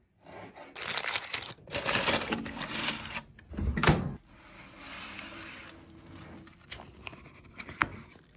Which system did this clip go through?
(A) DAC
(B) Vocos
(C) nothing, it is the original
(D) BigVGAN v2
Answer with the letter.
C